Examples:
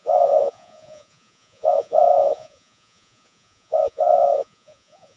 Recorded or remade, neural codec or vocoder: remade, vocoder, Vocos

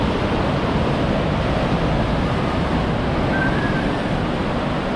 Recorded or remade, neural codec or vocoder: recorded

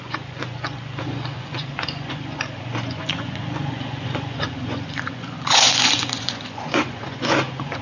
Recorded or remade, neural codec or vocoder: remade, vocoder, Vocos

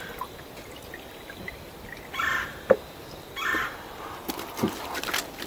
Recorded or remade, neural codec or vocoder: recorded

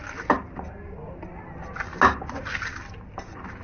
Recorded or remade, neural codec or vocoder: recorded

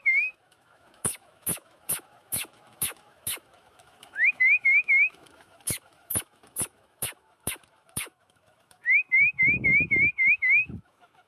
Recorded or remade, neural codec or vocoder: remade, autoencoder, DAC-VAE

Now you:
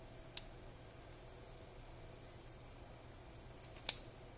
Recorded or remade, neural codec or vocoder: recorded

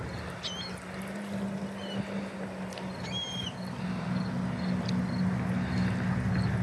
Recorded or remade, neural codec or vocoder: recorded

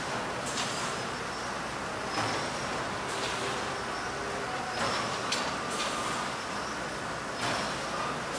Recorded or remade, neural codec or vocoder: recorded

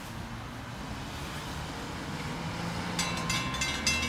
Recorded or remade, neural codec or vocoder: recorded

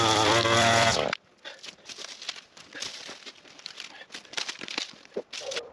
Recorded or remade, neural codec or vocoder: remade, vocoder, BigVGAN v2